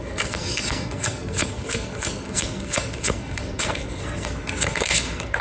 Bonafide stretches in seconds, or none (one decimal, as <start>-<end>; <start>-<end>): none